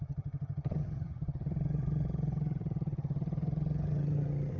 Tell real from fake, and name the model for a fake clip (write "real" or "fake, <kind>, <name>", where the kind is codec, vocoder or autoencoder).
fake, vocoder, HiFi-GAN